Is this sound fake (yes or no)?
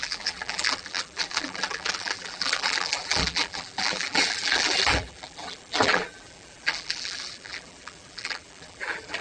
yes